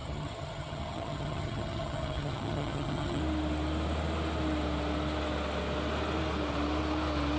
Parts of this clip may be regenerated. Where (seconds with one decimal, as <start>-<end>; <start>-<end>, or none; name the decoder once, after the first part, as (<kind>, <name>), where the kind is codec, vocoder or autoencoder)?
0.0-3.2 (vocoder, HiFi-GAN)